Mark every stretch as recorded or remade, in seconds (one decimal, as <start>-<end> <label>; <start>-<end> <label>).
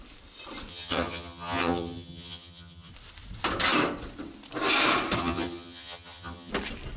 0.0-0.7 recorded; 0.7-2.9 remade; 2.9-5.2 recorded; 5.2-6.5 remade; 6.5-7.0 recorded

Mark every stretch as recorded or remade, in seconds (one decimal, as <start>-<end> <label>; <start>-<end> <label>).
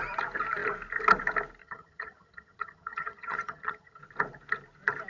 0.0-1.6 recorded; 1.6-4.0 remade; 4.0-5.1 recorded